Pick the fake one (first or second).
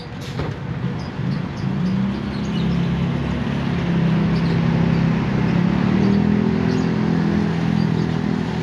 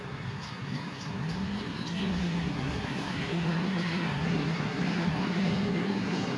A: second